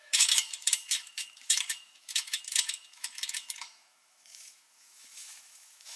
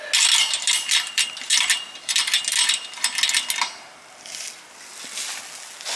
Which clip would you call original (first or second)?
second